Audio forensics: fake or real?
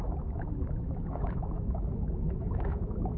fake